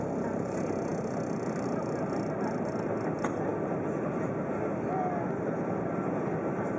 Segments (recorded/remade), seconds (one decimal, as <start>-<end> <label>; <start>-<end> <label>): 0.0-6.8 recorded